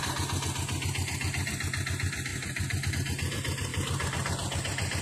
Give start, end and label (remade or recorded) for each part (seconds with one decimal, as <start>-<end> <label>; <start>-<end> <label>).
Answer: 0.0-5.0 recorded